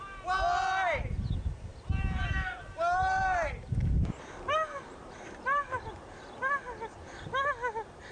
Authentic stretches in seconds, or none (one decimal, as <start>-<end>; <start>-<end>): 0.0-1.7; 6.2-8.1